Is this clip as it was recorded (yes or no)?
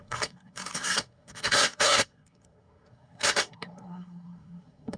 no